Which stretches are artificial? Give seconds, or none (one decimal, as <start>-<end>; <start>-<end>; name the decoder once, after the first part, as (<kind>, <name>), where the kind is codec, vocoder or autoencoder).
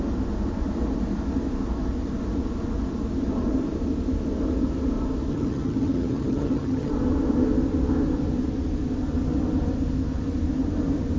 5.3-6.9 (vocoder, HiFi-GAN)